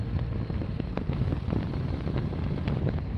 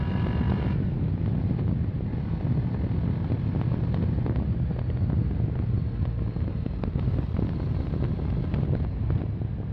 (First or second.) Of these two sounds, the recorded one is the second